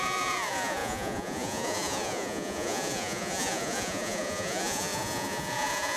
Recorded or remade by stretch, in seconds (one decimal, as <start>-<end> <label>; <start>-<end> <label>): 0.0-6.0 remade